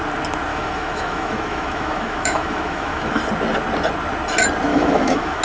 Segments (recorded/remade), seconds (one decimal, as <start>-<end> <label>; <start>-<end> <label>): 0.0-0.5 recorded; 0.5-3.2 remade; 3.2-4.7 recorded; 4.7-5.4 remade